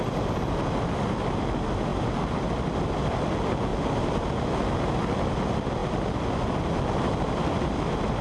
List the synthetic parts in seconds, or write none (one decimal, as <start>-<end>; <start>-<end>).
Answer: none